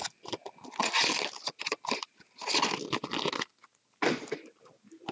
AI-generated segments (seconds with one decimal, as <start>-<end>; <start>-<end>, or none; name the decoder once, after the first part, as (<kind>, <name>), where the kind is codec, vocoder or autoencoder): none